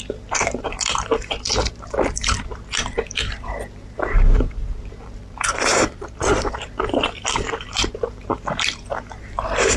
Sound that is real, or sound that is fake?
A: fake